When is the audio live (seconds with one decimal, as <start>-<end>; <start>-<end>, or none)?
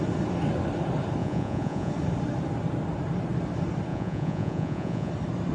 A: 0.0-1.2; 1.9-3.9; 5.1-5.5